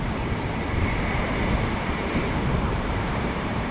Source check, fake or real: fake